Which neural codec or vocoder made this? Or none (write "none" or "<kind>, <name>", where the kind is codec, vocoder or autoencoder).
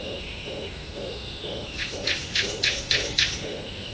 autoencoder, DAC-VAE